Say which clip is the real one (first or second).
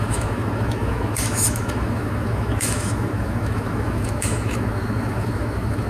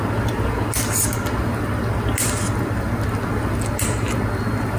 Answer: second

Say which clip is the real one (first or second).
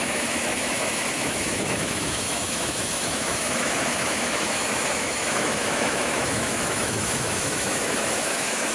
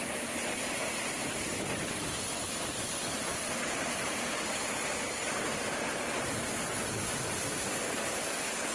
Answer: second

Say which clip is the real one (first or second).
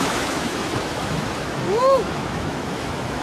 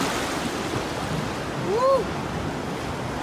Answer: second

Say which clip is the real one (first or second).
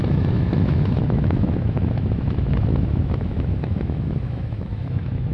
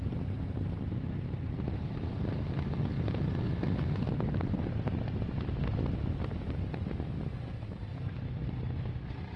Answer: second